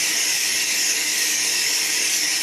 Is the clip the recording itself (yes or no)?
no